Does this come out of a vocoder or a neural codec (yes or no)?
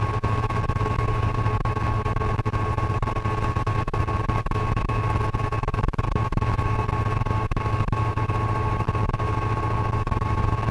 no